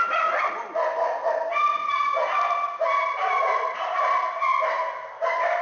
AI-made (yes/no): no